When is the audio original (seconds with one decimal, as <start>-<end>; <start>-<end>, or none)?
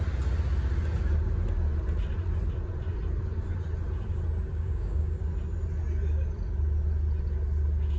0.0-4.5; 5.2-8.0